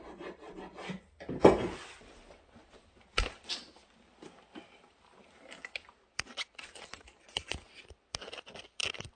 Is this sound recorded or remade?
recorded